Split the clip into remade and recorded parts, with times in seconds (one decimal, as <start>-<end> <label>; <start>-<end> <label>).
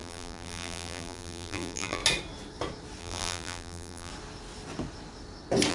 0.0-2.0 remade; 2.0-3.0 recorded; 3.0-4.1 remade; 4.1-5.7 recorded